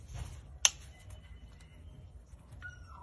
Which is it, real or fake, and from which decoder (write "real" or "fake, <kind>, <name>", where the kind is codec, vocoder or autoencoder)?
real